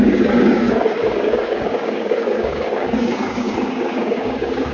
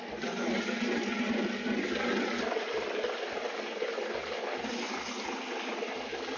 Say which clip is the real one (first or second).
second